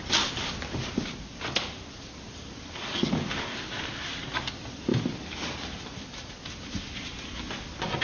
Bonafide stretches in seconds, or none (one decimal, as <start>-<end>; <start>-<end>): 0.0-8.0